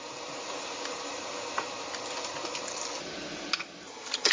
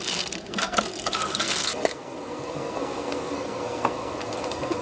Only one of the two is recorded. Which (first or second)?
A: first